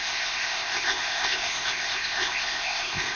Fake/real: fake